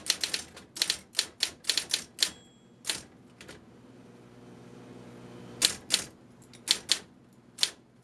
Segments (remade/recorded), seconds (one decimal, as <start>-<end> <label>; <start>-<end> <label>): 0.0-8.0 recorded